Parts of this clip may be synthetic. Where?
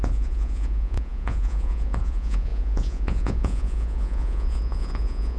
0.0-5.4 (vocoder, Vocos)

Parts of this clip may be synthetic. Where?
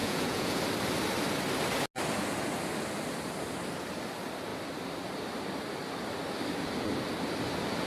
0.0-0.6 (vocoder, Vocos)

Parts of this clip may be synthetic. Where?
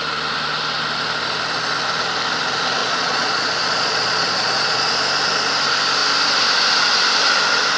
2.8-4.9 (vocoder, Vocos)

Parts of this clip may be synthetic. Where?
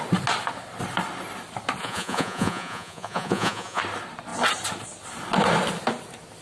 1.8-3.8 (vocoder, Vocos)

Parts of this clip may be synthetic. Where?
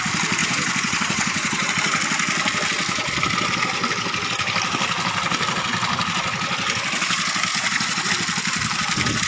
0.4-1.7 (vocoder, Vocos); 7.5-8.1